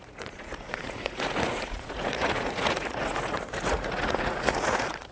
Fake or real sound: fake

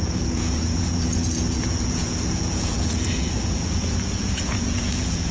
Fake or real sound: fake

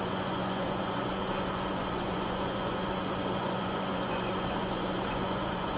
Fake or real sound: fake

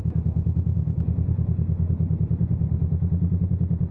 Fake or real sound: real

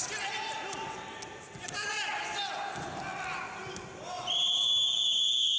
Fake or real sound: real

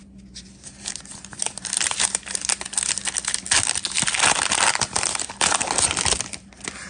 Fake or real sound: real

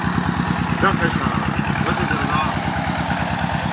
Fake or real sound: real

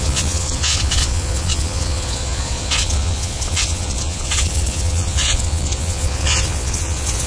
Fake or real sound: fake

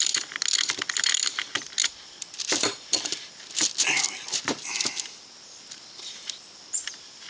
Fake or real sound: real